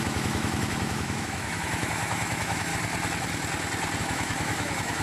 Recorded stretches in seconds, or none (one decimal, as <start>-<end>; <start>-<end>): 2.7-4.0